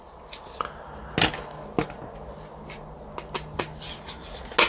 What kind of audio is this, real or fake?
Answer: real